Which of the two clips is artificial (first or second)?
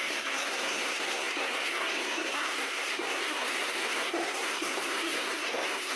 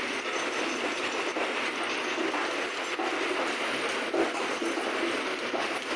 first